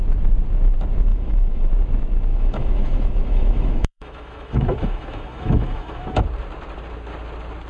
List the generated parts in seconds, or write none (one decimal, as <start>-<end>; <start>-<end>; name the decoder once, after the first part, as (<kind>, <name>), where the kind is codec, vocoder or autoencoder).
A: 1.1-1.7 (autoencoder, DAC-VAE); 2.3-6.2